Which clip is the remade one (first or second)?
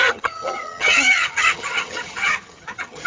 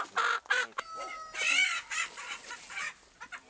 first